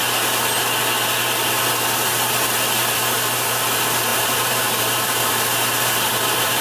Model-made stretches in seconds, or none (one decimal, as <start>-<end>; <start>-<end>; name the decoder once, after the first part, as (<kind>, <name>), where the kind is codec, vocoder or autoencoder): 4.1-6.6 (vocoder, BigVGAN v2)